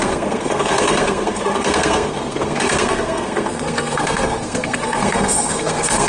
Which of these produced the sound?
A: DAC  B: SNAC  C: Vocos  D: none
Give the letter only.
B